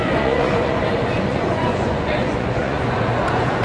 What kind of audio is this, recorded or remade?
remade